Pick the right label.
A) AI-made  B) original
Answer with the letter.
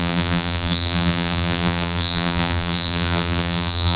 A